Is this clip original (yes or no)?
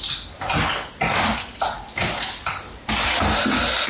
yes